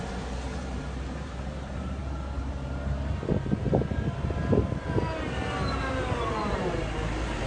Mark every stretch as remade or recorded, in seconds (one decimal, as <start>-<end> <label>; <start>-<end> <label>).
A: 0.0-2.0 remade; 2.0-5.9 recorded; 5.9-7.5 remade